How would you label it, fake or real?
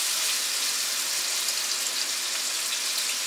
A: real